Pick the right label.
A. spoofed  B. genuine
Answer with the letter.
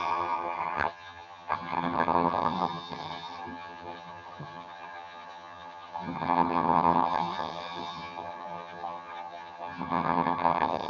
A